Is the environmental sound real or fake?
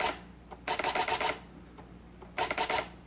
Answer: real